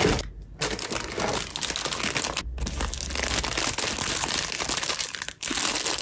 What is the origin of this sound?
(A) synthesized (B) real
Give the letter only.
B